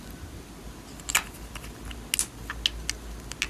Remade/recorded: recorded